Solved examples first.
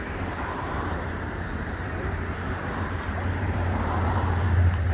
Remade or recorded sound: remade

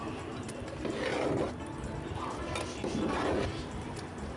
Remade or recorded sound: recorded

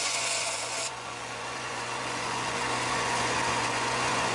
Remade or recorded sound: remade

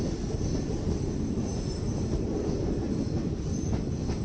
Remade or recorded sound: recorded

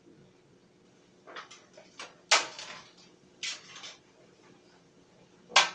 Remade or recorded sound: recorded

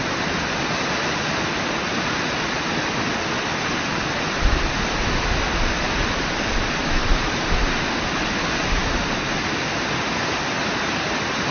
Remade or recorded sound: recorded